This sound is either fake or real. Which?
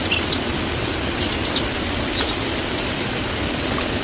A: real